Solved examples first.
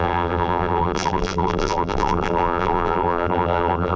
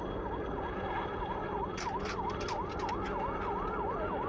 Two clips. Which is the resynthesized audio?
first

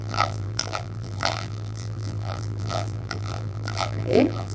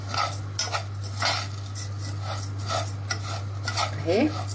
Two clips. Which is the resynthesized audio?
first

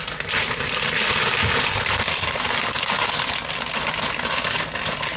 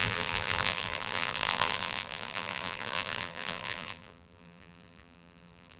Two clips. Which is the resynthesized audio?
second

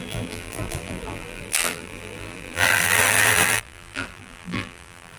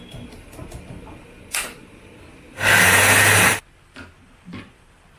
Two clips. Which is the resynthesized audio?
first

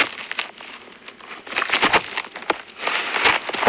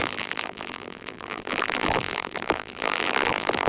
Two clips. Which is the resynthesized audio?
second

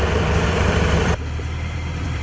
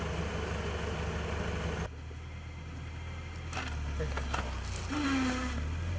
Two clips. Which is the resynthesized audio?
first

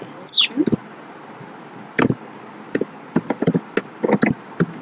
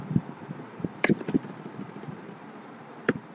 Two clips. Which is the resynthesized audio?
second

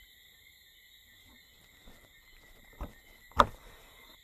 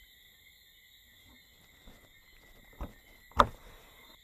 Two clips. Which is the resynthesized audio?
first